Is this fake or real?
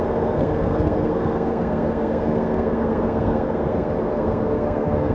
fake